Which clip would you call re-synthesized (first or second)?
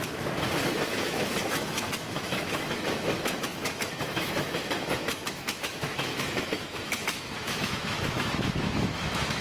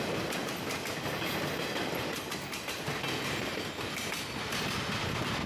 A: first